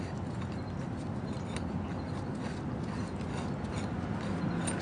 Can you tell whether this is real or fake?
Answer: real